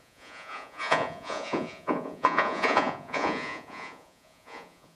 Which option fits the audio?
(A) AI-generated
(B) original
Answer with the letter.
A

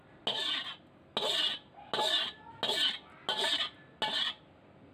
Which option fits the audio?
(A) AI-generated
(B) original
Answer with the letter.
B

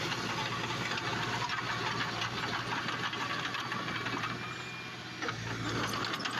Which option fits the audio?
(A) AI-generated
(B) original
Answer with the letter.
B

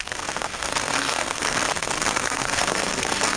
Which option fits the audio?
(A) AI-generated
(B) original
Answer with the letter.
A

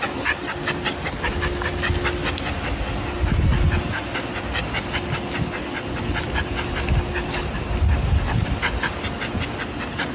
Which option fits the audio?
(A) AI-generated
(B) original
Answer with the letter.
B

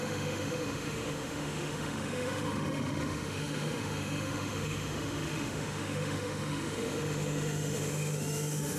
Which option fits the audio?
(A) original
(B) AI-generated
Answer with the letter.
B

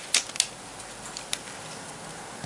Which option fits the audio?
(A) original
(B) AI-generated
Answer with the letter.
A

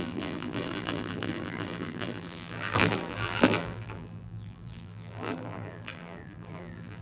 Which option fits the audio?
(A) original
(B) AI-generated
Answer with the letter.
B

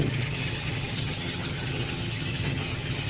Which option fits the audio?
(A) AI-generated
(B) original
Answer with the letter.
A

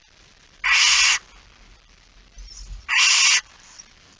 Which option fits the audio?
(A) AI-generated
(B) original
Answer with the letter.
B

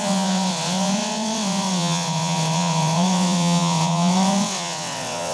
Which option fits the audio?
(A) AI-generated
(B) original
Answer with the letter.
A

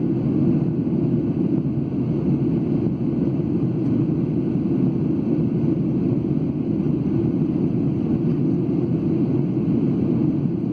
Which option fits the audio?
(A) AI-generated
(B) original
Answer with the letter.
B